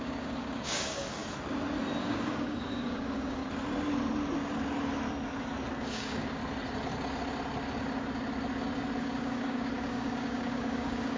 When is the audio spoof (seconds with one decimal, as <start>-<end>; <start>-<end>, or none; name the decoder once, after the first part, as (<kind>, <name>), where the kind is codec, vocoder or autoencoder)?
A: 0.0-1.2 (codec, DAC); 2.0-3.4; 5.8-6.4; 9.0-11.2